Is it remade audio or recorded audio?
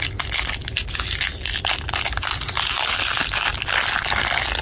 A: recorded